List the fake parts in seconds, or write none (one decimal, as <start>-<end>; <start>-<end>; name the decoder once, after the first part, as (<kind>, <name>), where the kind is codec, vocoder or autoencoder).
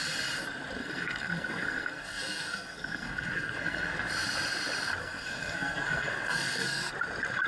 0.8-4.1 (codec, SNAC); 5.0-6.9